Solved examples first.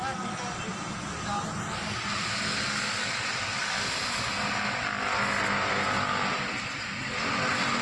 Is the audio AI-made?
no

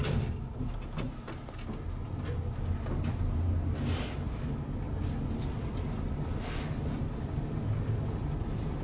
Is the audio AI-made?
no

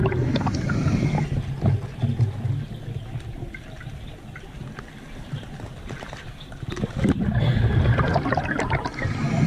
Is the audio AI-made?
no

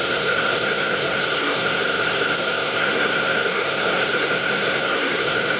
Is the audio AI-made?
yes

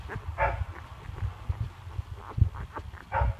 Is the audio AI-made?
no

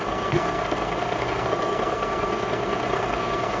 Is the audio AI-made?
yes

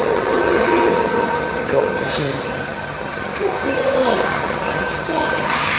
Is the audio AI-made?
yes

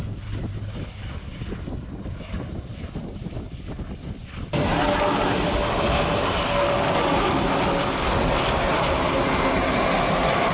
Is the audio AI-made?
no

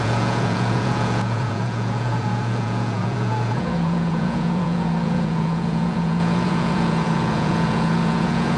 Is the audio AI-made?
yes